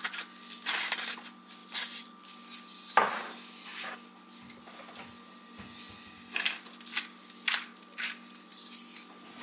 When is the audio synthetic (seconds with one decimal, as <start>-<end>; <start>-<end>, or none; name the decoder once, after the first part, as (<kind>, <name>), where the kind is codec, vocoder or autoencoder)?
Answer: none